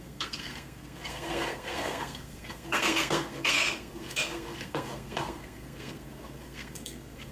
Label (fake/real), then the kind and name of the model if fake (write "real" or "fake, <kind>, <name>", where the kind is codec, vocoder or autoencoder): fake, codec, SNAC